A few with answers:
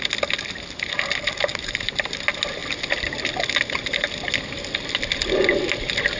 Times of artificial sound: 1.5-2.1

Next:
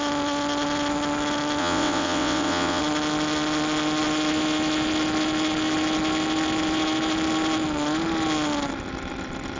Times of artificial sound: 1.6-2.8

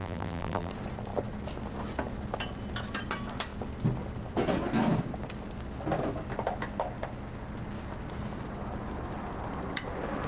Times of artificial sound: 0.0-0.7

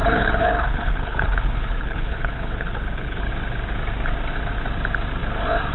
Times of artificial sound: 0.0-3.3

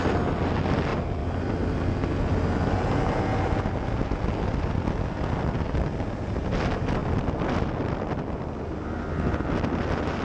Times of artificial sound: none